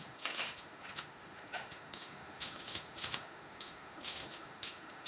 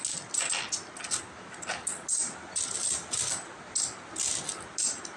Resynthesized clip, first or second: first